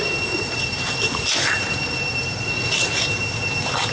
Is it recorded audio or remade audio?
recorded